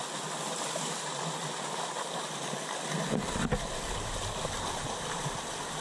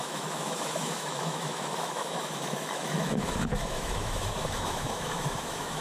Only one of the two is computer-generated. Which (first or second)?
second